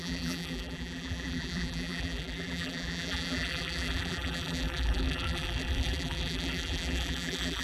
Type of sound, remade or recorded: remade